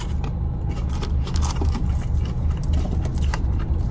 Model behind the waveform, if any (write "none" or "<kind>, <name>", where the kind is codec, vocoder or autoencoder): vocoder, BigVGAN v2